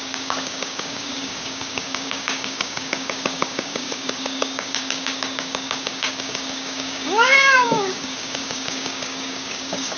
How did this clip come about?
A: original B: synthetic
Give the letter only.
B